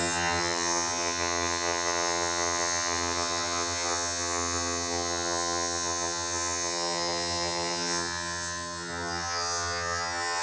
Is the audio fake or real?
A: fake